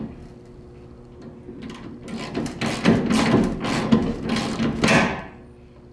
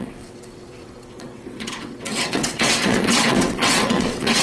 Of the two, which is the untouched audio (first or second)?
first